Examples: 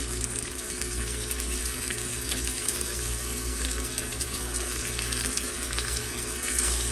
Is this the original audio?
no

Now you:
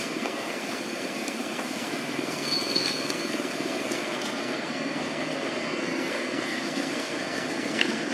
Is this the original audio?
no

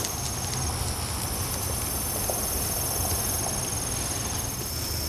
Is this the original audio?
yes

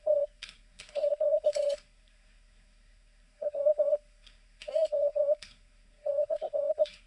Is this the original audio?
no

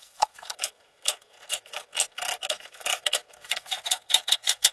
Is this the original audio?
no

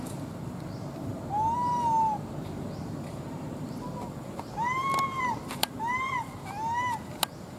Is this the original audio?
yes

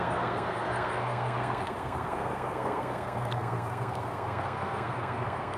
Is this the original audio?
no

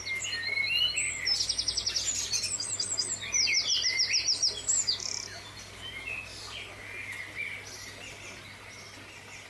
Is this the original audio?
yes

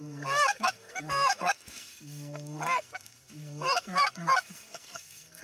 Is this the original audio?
no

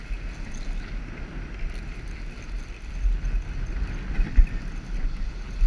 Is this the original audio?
yes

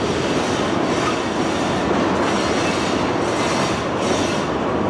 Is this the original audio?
yes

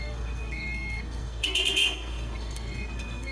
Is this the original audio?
no